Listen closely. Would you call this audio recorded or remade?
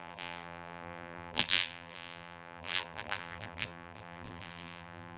remade